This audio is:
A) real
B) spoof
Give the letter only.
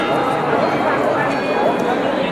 A